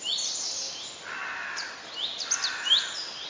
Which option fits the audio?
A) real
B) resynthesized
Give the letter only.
A